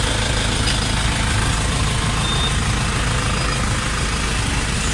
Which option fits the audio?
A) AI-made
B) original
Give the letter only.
B